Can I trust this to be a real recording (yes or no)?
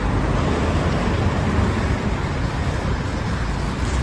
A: yes